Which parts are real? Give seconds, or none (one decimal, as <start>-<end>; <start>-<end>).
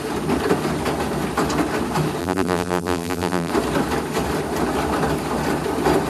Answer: 0.0-2.2; 3.5-6.1